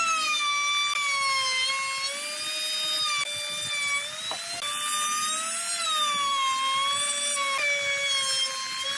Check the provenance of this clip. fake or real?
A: real